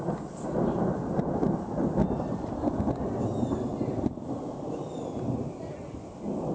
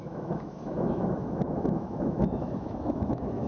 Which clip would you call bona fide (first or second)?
first